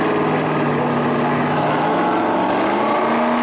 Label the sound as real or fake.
real